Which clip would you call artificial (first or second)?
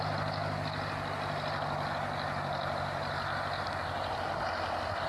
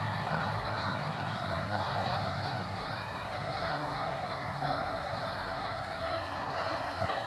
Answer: second